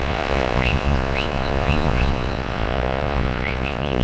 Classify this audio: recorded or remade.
remade